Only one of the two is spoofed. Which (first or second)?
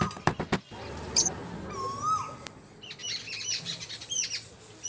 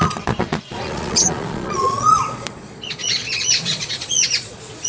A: second